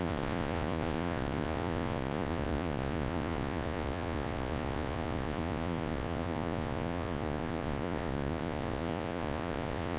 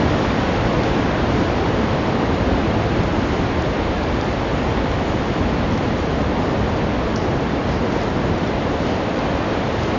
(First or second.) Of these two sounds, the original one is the second